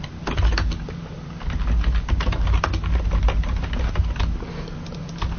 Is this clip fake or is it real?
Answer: real